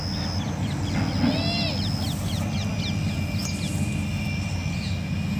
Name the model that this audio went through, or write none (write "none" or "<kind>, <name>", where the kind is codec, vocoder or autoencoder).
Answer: none